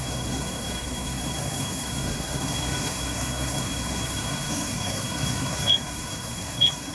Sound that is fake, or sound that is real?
fake